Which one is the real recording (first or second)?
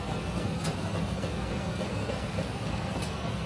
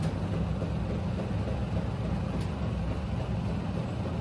second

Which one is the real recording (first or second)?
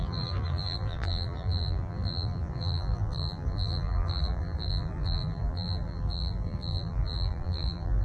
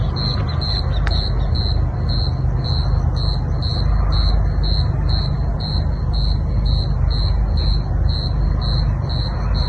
second